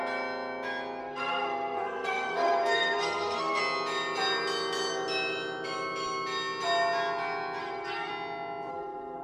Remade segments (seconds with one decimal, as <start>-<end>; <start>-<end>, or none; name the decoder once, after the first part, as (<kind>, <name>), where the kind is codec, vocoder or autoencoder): 1.0-3.6 (codec, SNAC); 7.6-8.1; 8.7-9.2